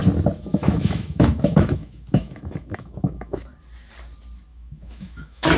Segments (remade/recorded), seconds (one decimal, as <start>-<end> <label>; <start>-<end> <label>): 0.0-0.5 recorded; 0.5-3.5 remade; 3.5-4.5 recorded; 4.5-5.6 remade